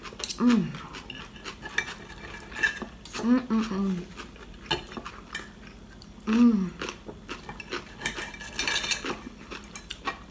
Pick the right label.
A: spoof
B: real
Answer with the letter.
B